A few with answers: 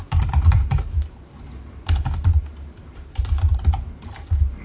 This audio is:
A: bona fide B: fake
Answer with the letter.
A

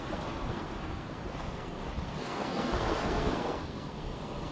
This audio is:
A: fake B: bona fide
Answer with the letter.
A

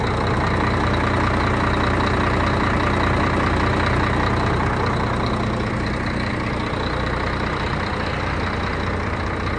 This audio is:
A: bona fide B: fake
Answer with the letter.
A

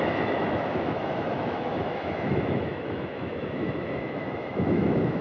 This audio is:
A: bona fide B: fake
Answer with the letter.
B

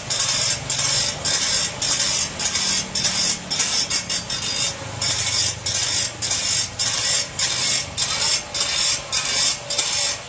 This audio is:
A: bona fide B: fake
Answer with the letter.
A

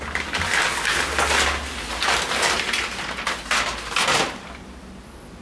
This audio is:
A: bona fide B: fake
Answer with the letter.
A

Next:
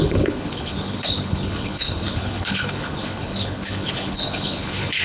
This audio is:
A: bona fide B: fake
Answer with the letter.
B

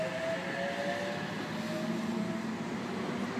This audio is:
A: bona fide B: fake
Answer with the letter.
A